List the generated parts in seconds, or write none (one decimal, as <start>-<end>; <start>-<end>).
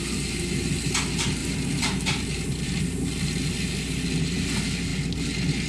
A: 1.4-2.8